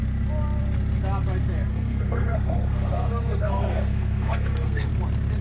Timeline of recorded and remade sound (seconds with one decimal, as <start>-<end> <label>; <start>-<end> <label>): 0.0-1.7 recorded; 1.7-4.9 remade; 4.9-5.4 recorded